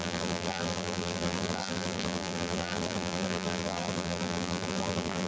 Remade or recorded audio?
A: remade